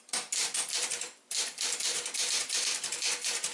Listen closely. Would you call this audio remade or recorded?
remade